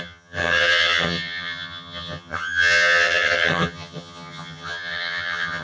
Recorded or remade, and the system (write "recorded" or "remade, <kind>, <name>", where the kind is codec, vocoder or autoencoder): remade, vocoder, HiFi-GAN